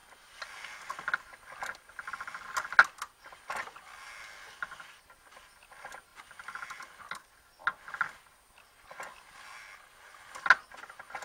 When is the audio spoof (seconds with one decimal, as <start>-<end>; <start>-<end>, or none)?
none